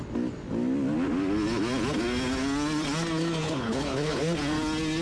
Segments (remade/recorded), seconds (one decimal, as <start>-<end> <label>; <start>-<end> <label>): 0.0-3.4 recorded; 3.4-4.2 remade; 4.2-5.0 recorded